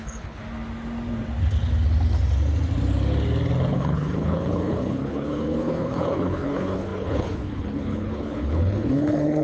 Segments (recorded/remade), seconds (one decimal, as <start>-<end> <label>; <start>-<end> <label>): 0.0-0.4 remade; 0.4-3.7 recorded; 3.7-9.4 remade